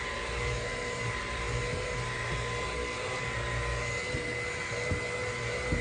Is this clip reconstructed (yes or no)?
no